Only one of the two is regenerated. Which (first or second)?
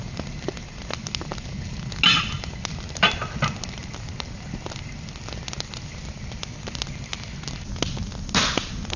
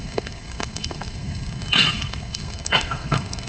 second